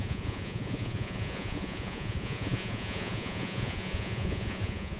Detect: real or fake fake